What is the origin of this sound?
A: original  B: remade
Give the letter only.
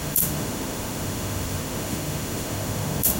B